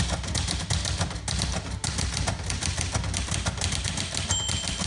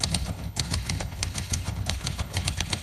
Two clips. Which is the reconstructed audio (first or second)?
second